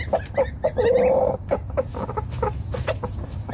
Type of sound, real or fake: real